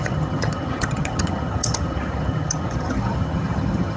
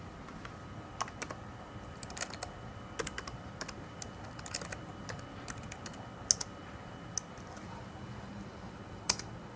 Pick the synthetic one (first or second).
first